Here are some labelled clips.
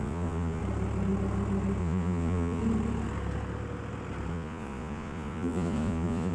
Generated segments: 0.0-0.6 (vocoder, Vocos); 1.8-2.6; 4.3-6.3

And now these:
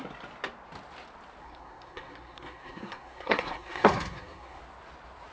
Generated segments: 1.4-4.6 (codec, SNAC)

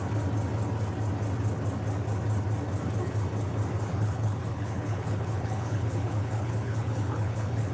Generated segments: 3.9-7.7 (codec, HILCodec)